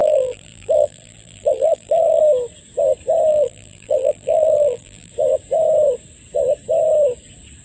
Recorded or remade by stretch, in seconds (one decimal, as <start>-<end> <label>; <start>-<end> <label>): 0.0-2.2 remade; 2.2-3.3 recorded; 3.3-5.1 remade; 5.1-7.6 recorded